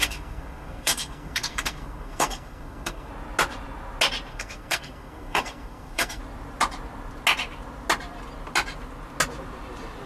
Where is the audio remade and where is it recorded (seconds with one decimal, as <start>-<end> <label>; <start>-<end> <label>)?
0.0-3.1 remade; 3.1-4.3 recorded; 4.3-6.2 remade; 6.2-10.1 recorded